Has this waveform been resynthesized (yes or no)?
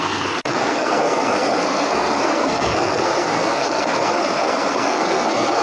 yes